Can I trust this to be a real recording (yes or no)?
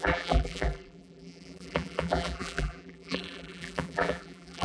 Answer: no